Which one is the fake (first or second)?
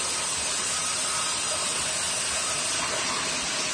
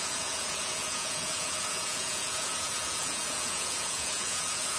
second